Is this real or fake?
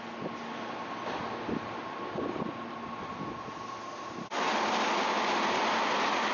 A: real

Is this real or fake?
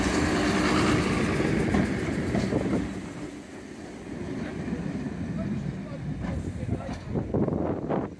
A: real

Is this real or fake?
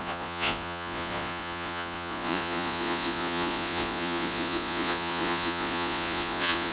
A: fake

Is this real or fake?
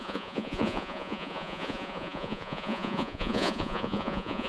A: fake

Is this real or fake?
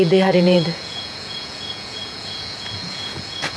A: fake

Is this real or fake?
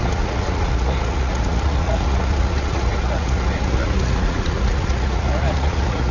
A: fake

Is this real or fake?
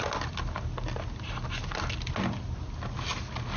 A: real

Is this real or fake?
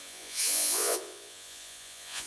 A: fake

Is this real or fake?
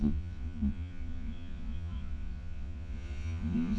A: fake